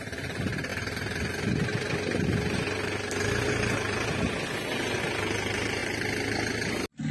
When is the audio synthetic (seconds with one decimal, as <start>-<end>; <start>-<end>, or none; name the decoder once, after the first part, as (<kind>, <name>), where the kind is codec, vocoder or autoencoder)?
none